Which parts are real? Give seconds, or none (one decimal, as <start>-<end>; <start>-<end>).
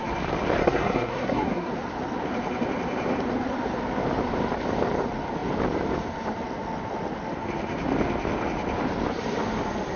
0.0-0.6; 1.7-10.0